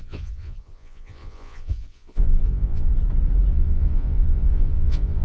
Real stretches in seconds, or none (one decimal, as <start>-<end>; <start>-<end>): 2.9-3.5